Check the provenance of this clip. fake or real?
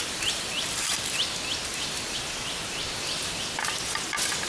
real